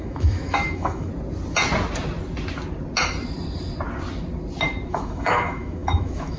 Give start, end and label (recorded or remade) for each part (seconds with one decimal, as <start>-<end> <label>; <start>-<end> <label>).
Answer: 0.0-1.1 remade; 1.1-4.9 recorded; 4.9-6.4 remade